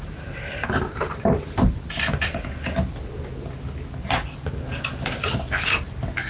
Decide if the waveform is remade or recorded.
recorded